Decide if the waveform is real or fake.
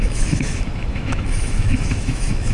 fake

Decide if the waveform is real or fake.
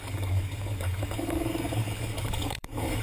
fake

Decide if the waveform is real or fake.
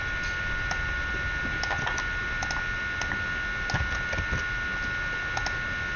real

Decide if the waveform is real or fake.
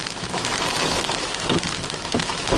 fake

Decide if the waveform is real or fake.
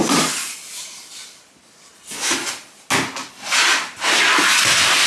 real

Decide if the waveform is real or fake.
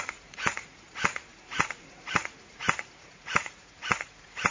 fake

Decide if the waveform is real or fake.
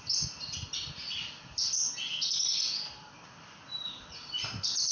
real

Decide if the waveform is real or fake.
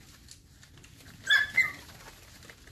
real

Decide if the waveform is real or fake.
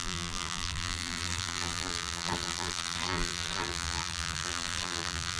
fake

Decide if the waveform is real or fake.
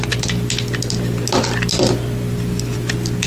real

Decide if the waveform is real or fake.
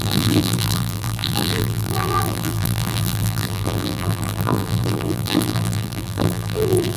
fake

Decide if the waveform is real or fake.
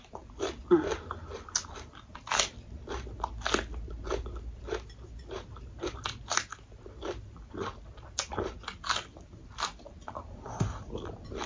real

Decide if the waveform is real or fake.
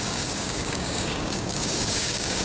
fake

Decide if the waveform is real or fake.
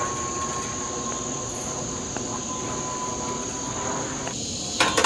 real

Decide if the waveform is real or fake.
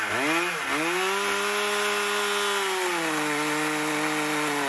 real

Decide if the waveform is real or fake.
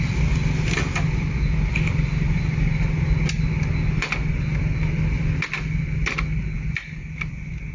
real